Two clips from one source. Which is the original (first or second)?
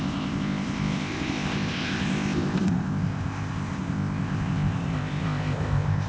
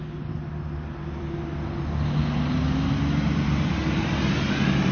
second